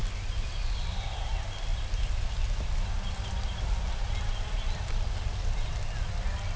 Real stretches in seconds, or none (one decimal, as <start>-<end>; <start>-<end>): 0.0-1.7; 5.7-6.6